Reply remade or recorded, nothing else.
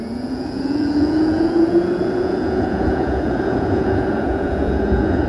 remade